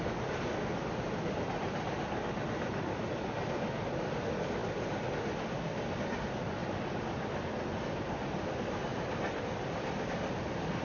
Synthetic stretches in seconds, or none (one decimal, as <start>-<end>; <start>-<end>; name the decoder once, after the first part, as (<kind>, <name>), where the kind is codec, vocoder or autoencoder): 8.9-10.1 (vocoder, BigVGAN v2)

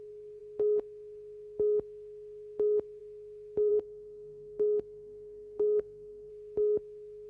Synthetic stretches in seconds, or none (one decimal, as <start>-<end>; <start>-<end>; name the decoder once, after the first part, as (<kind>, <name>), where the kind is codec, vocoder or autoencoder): 3.7-6.3 (codec, SNAC)

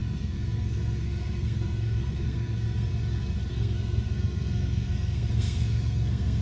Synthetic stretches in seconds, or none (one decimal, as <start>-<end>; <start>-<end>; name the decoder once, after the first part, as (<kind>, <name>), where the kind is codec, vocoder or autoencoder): 0.0-2.9 (codec, SNAC); 3.5-6.4

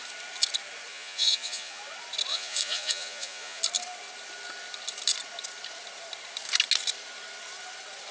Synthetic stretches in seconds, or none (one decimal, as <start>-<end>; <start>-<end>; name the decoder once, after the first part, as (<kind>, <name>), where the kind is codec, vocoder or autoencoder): 0.9-1.8 (vocoder, Vocos); 2.3-3.6

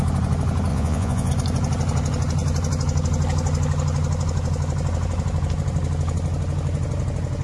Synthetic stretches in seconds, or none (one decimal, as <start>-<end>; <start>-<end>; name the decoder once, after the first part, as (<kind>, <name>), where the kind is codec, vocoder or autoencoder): 0.7-1.3 (vocoder, Vocos)

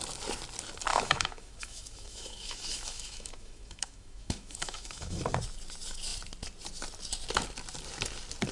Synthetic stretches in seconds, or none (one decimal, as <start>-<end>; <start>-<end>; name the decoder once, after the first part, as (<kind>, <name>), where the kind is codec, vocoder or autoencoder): 0.9-5.2 (autoencoder, DAC-VAE)

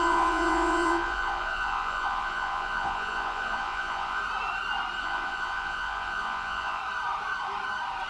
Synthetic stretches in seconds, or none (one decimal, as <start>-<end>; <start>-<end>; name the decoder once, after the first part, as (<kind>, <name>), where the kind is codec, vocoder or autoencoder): 0.0-4.2 (vocoder, Vocos); 5.0-6.8